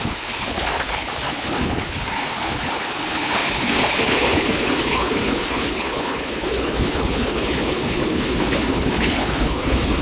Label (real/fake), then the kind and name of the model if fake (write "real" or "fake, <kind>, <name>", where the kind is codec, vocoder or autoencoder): fake, codec, HILCodec